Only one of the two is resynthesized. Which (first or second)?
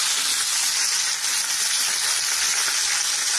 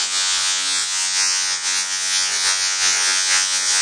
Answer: second